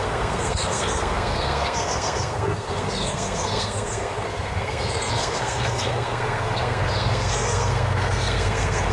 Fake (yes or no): yes